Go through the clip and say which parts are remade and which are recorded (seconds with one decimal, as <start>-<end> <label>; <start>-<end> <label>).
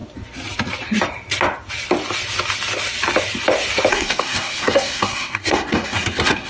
0.0-3.9 recorded; 3.9-6.5 remade